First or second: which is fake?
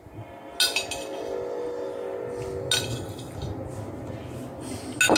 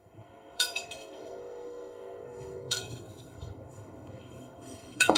second